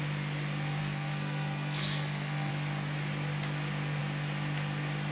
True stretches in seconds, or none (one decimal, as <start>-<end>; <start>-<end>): 0.0-0.8; 2.5-5.1